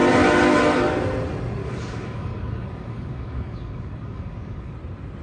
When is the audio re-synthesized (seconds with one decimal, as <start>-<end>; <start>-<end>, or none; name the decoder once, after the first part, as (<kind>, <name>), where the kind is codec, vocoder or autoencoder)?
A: 1.6-4.7 (codec, DAC)